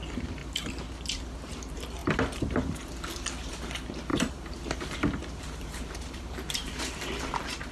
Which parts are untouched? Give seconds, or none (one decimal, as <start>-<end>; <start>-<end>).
0.0-0.4; 0.9-2.0; 2.8-4.1; 6.8-7.7